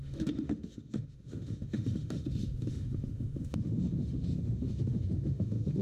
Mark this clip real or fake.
fake